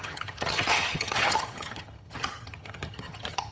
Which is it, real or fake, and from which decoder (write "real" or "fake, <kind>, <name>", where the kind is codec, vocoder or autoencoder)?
fake, vocoder, HiFi-GAN